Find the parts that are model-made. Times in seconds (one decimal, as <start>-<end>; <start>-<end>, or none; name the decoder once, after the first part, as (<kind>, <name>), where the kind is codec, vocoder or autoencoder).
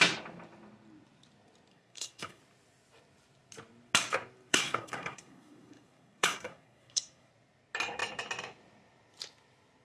1.7-2.4 (codec, SNAC); 4.5-7.3